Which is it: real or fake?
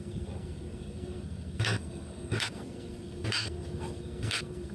fake